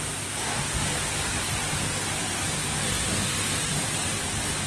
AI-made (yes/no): no